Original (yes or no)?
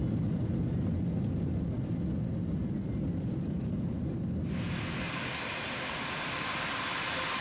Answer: yes